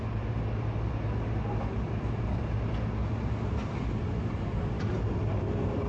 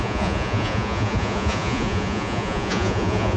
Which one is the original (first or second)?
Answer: first